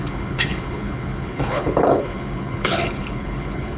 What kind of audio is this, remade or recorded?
remade